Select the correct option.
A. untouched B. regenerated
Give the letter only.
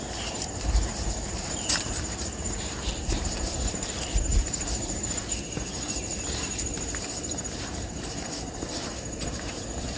B